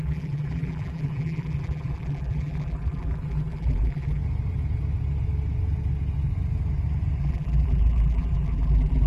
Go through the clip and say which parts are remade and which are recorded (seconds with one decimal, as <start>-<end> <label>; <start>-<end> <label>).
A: 0.0-4.2 remade; 4.2-7.2 recorded; 7.2-9.1 remade